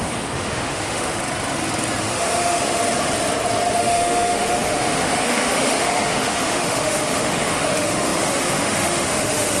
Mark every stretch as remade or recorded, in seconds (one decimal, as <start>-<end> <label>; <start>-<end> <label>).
0.0-1.2 remade; 1.2-2.0 recorded; 2.0-2.8 remade; 2.8-3.8 recorded; 3.8-9.6 remade